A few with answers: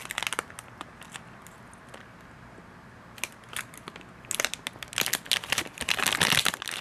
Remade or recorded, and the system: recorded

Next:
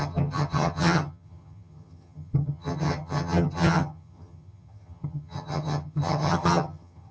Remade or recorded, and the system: remade, vocoder, HiFi-GAN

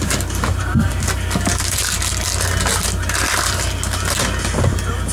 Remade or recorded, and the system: recorded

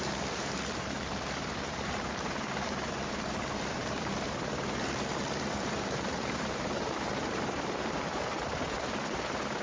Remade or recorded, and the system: remade, vocoder, BigVGAN v2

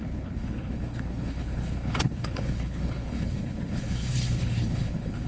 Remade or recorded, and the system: remade, codec, HILCodec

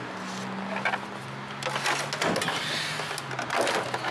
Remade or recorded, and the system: recorded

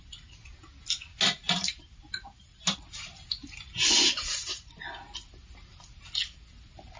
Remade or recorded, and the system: recorded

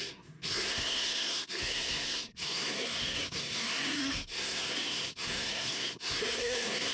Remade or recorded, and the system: remade, codec, SNAC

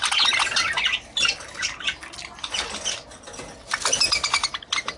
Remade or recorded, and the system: recorded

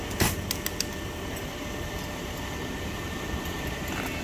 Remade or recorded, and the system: recorded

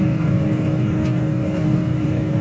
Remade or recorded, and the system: remade, codec, DAC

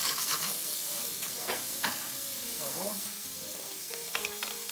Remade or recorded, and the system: remade, codec, SNAC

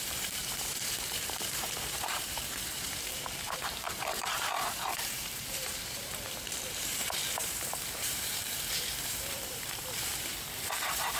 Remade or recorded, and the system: remade, vocoder, BigVGAN v2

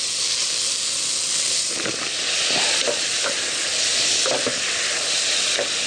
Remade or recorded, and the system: recorded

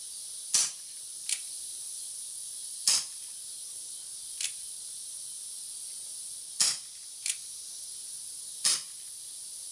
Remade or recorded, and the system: recorded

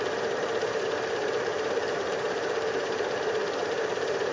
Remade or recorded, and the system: remade, vocoder, BigVGAN v2